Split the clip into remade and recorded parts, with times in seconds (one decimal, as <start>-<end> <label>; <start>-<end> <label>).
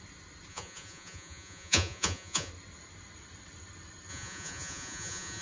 0.0-0.5 recorded; 0.5-2.5 remade; 2.5-4.1 recorded; 4.1-5.4 remade